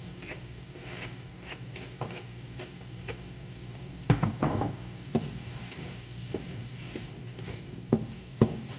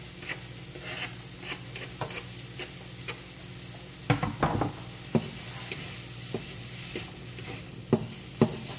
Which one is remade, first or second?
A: first